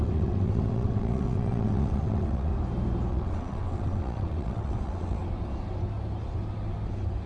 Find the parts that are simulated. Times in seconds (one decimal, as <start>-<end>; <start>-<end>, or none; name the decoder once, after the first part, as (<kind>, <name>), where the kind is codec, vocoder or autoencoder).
0.0-2.5 (vocoder, WaveNeXt); 3.1-5.2